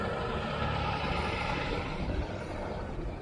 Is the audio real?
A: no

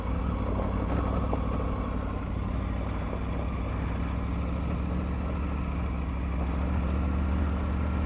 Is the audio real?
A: yes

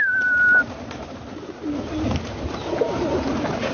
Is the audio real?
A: yes